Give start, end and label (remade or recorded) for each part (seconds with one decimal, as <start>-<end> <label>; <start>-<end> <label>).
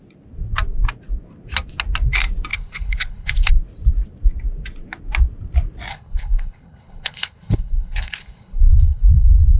0.0-2.5 recorded; 2.5-3.5 remade; 3.5-5.9 recorded; 5.9-9.6 remade